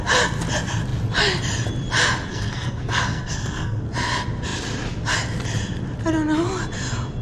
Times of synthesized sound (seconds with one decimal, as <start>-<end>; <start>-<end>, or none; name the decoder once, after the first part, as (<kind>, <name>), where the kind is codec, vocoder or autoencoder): 2.3-3.8 (codec, SNAC)